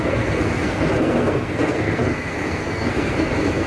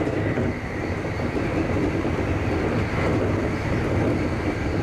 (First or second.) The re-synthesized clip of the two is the first